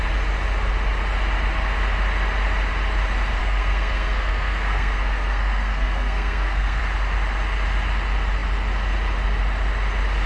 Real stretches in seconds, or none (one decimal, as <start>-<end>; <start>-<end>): 0.0-3.4; 6.8-10.3